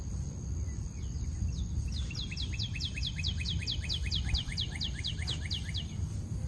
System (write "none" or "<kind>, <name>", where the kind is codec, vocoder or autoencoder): none